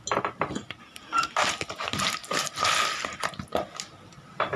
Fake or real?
real